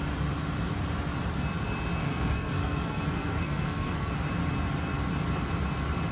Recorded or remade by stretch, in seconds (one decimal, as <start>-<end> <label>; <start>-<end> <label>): 0.0-2.0 recorded; 2.0-4.1 remade; 4.1-6.1 recorded